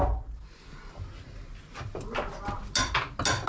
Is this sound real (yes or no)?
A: yes